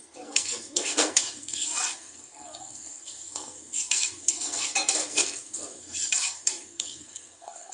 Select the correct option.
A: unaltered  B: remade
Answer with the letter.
B